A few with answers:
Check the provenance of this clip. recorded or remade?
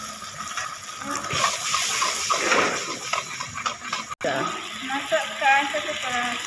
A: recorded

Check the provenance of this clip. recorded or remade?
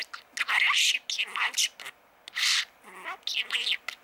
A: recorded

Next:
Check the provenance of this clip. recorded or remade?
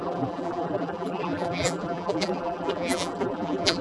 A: remade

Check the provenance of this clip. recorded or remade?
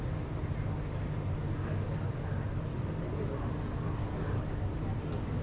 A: recorded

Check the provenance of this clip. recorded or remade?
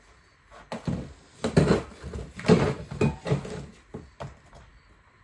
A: recorded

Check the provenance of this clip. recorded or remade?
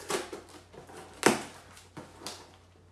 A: recorded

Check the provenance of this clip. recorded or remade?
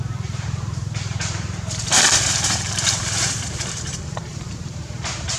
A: remade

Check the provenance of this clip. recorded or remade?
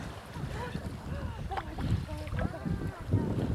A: recorded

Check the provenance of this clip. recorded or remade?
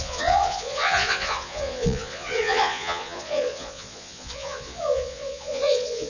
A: remade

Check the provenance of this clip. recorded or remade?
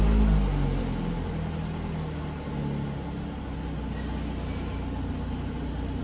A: recorded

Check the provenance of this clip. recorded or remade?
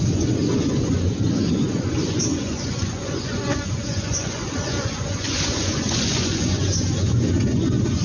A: remade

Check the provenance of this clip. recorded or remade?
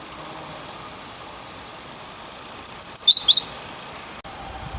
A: recorded